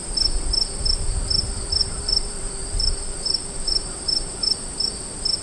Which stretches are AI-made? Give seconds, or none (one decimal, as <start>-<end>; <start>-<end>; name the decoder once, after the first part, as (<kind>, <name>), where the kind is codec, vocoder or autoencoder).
1.8-5.0 (vocoder, BigVGAN v2)